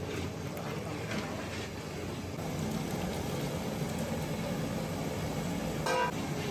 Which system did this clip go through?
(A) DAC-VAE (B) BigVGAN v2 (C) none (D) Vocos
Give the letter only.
C